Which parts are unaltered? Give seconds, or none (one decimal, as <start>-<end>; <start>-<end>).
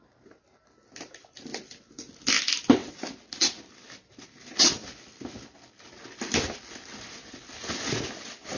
0.0-8.6